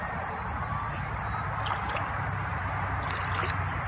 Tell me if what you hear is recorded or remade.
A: recorded